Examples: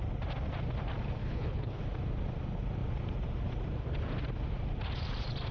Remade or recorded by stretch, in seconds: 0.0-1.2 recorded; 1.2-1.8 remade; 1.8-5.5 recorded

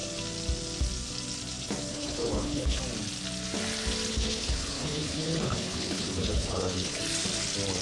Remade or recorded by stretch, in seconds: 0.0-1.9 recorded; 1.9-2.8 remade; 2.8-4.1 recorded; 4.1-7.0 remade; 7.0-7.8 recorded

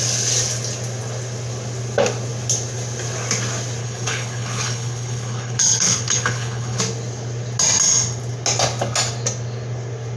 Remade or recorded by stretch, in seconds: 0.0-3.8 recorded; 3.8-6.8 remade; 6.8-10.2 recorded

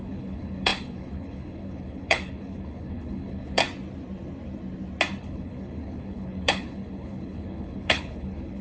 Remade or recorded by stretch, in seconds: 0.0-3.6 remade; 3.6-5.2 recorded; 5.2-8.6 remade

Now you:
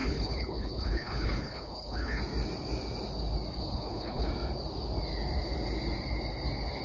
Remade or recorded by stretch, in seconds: 0.0-2.2 remade; 2.2-3.6 recorded; 3.6-4.3 remade; 4.3-6.8 recorded

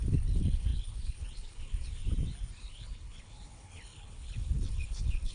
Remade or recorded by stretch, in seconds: 0.0-2.0 remade; 2.0-2.6 recorded; 2.6-5.3 remade

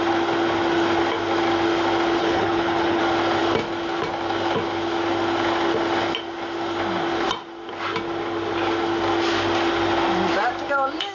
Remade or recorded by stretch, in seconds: 0.0-2.2 recorded; 2.2-3.0 remade; 3.0-11.1 recorded